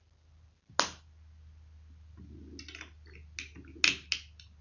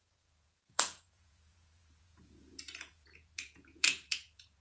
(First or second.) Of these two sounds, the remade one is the second